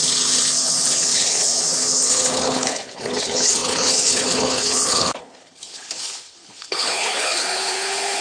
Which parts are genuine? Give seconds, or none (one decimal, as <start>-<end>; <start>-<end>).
none